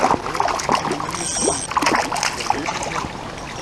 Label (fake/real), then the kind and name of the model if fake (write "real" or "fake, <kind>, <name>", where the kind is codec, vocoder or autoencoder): real